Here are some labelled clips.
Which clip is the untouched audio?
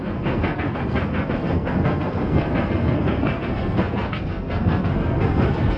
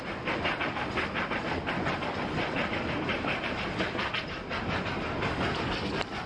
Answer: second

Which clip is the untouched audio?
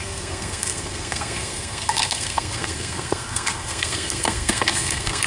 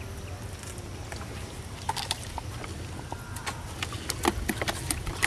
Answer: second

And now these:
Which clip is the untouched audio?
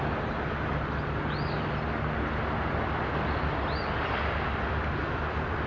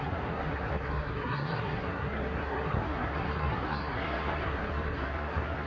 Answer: first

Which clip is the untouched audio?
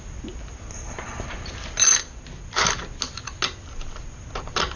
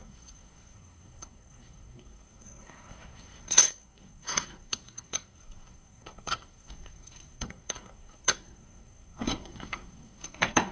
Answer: first